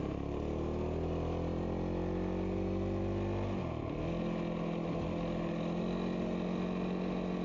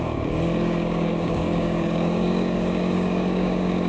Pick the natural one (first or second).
first